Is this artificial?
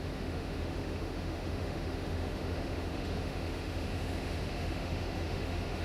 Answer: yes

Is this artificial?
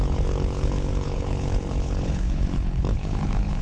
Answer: yes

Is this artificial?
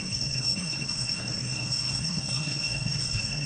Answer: yes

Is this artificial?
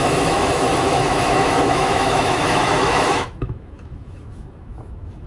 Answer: yes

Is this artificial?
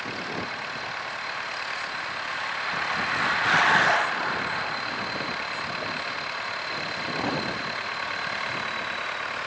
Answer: no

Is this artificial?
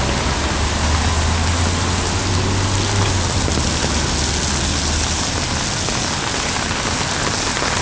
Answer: no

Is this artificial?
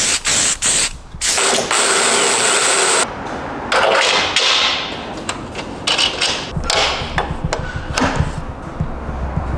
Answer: no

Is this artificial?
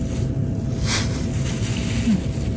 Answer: no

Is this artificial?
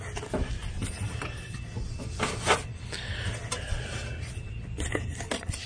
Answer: no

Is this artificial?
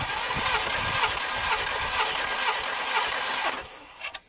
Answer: no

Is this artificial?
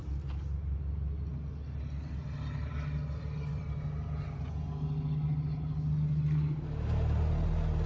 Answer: no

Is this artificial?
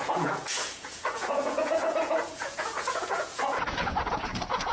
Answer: yes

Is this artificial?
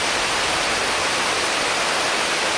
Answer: no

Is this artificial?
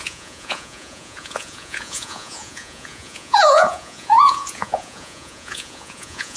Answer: yes